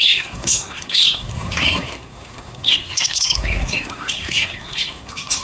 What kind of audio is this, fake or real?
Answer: fake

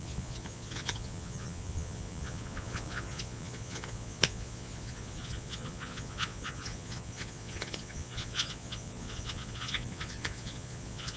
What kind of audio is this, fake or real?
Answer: fake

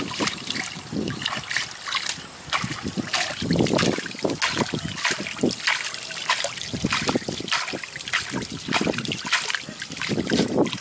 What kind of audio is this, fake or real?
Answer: real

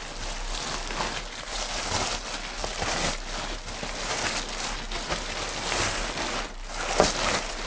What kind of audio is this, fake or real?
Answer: real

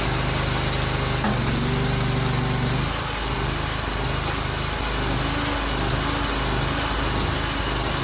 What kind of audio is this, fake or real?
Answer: real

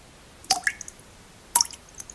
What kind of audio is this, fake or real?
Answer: real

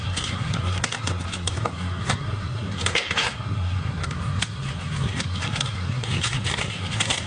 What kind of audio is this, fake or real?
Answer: fake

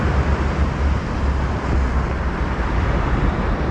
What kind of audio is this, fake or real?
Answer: real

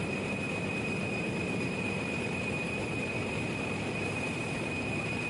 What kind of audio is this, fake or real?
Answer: fake